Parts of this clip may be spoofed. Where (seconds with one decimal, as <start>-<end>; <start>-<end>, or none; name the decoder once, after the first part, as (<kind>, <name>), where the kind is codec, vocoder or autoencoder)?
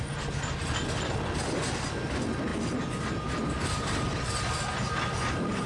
none